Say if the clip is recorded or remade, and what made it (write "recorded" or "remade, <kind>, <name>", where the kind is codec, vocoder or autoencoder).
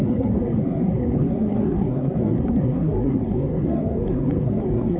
remade, codec, SNAC